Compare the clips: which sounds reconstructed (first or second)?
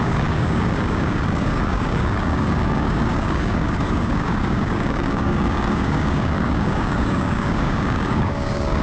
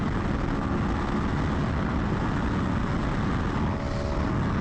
first